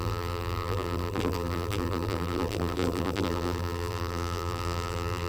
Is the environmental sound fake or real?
fake